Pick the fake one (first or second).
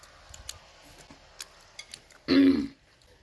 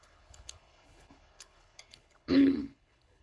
second